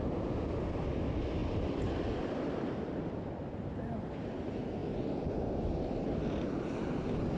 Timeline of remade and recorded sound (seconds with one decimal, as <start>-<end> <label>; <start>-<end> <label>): 0.0-1.4 recorded; 1.4-3.1 remade; 3.1-7.4 recorded